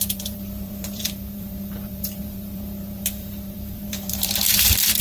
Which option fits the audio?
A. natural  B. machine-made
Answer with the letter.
B